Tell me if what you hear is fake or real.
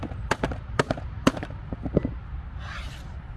fake